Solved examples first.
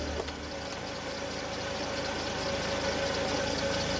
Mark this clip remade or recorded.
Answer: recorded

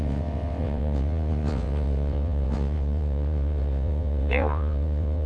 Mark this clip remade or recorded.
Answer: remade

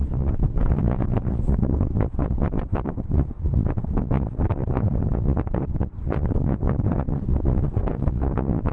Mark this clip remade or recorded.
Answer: remade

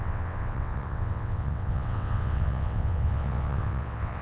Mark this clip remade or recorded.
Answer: remade